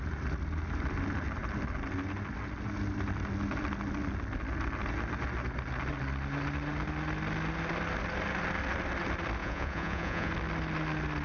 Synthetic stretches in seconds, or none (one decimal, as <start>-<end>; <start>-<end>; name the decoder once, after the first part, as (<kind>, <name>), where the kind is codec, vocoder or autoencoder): 9.4-10.3 (vocoder, Vocos)